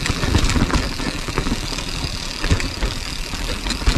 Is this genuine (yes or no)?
no